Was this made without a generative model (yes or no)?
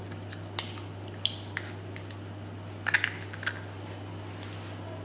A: yes